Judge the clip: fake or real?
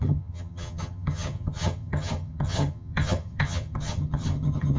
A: fake